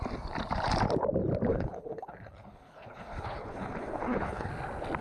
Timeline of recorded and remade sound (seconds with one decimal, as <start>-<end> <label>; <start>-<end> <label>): 0.0-1.5 recorded; 1.5-4.5 remade; 4.5-5.0 recorded